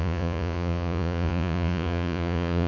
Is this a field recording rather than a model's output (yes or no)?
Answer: no